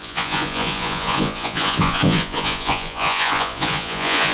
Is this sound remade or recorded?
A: remade